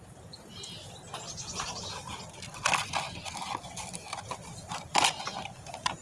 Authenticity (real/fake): real